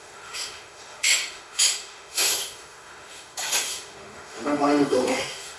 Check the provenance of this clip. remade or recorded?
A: remade